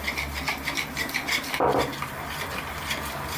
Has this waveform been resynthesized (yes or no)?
no